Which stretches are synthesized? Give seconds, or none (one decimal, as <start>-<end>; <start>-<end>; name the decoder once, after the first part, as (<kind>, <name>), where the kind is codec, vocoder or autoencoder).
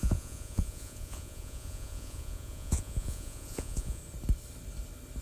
0.0-4.0 (vocoder, Vocos)